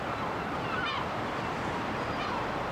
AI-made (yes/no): no